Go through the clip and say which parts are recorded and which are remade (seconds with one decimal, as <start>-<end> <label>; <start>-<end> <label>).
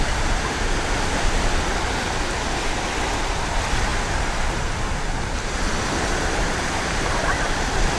0.0-8.0 recorded